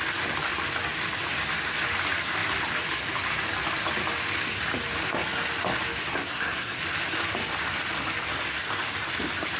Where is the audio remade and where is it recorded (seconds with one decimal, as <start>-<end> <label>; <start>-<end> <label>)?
0.0-6.1 recorded; 6.1-6.8 remade; 6.8-9.6 recorded